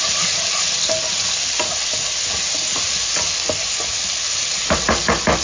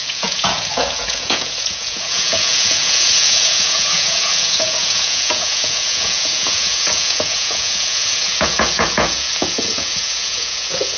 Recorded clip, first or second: first